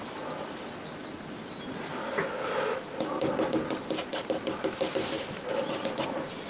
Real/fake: real